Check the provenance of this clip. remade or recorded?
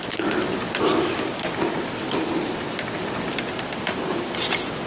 recorded